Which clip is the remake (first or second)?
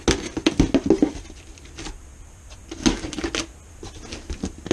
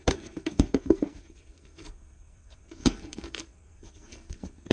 second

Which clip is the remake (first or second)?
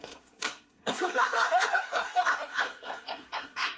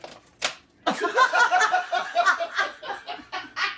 first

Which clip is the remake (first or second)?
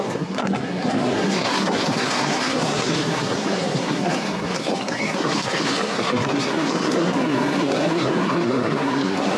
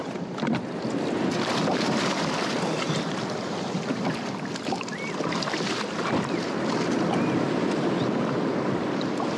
first